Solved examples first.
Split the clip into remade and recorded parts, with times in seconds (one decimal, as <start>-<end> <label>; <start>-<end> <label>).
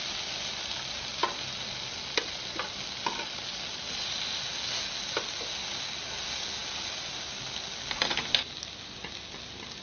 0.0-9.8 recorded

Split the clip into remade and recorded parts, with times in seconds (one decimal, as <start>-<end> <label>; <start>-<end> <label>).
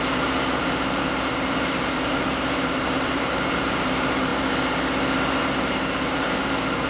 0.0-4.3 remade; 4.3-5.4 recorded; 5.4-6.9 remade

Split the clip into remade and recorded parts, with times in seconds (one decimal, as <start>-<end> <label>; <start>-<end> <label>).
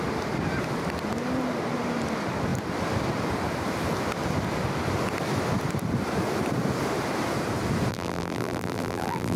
0.0-7.9 recorded; 7.9-9.4 remade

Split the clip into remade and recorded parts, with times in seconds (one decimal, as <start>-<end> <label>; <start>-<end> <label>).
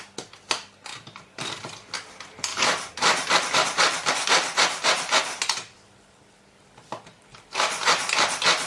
0.0-0.9 recorded; 0.9-1.5 remade; 1.5-2.5 recorded; 2.5-4.1 remade; 4.1-8.7 recorded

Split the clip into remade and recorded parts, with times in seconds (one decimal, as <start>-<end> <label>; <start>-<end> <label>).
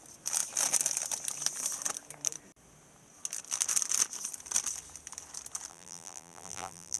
0.0-5.7 recorded; 5.7-7.0 remade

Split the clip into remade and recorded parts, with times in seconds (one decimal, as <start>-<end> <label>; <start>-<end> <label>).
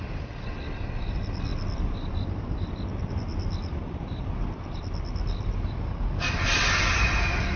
0.0-7.6 recorded